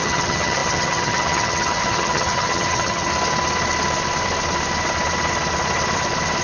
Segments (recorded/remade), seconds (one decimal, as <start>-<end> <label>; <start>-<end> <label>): 0.0-3.1 remade; 3.1-6.4 recorded